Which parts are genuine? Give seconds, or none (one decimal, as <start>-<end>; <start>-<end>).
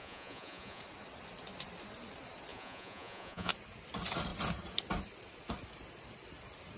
0.8-2.5; 3.5-6.8